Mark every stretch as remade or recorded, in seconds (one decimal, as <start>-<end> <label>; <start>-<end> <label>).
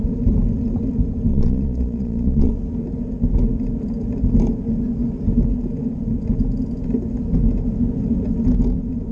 0.0-1.3 recorded; 1.3-2.5 remade; 2.5-9.1 recorded